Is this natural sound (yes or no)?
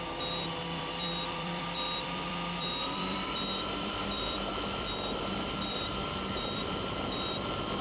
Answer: no